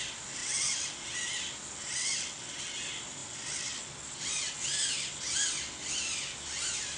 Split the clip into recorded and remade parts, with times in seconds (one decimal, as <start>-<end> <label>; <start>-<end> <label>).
0.0-7.0 recorded